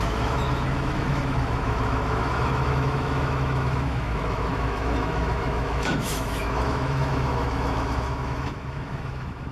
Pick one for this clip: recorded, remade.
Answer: remade